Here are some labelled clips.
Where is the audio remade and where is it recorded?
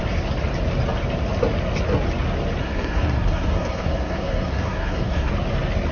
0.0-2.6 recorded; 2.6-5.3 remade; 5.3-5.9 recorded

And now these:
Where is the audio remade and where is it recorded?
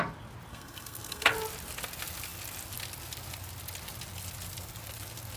0.0-0.5 recorded; 0.5-1.3 remade; 1.3-5.4 recorded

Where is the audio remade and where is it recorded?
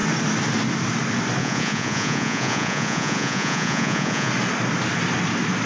0.0-1.4 recorded; 1.4-4.3 remade; 4.3-5.7 recorded